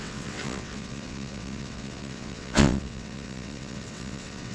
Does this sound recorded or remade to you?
remade